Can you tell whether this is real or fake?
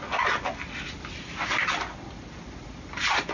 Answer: real